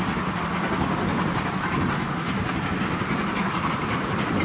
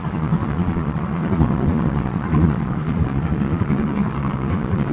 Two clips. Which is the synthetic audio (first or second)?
second